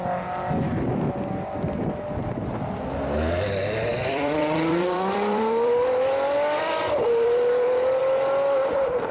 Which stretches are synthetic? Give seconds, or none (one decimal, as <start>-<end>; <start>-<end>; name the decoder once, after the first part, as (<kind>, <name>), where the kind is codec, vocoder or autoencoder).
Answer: 3.9-8.0 (vocoder, BigVGAN v2)